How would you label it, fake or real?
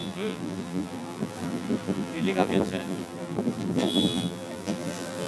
fake